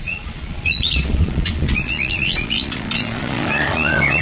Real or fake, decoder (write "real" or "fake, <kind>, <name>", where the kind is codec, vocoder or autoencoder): fake, vocoder, Vocos